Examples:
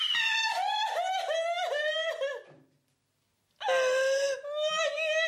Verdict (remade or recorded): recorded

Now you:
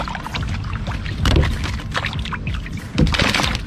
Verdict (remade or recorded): recorded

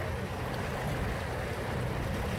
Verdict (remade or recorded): recorded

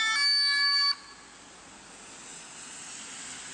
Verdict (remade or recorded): recorded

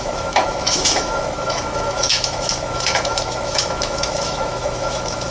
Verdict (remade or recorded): remade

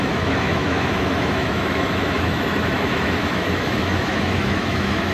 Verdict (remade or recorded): remade